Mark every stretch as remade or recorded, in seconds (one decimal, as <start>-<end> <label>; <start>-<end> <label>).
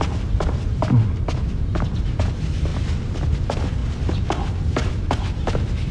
0.0-5.9 recorded